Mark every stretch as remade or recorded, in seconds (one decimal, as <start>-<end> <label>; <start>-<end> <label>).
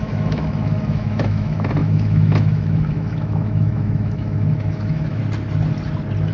0.0-5.2 remade; 5.2-6.3 recorded